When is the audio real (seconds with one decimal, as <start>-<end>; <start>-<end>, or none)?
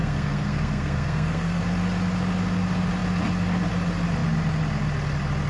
1.6-5.5